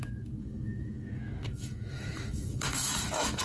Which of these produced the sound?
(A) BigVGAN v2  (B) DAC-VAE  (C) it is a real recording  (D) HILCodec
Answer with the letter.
B